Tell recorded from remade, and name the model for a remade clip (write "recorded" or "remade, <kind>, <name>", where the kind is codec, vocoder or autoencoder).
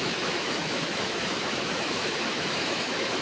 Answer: remade, autoencoder, DAC-VAE